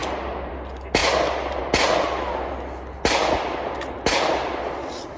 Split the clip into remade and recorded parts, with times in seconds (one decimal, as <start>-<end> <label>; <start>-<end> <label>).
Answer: 0.0-5.2 recorded